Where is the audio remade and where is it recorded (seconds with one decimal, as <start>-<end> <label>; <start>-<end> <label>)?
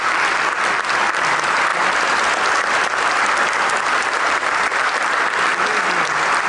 0.0-6.5 recorded